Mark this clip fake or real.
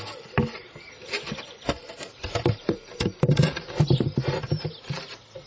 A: real